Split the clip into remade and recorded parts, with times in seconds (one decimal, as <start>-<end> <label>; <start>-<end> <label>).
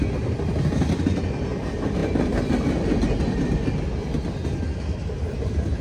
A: 0.0-5.8 recorded